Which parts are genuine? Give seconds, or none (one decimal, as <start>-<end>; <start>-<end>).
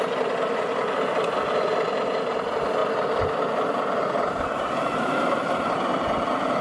none